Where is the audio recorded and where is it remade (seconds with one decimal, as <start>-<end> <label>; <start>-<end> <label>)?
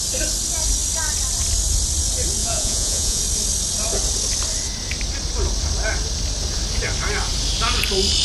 0.0-2.4 recorded; 2.4-3.2 remade; 3.2-8.2 recorded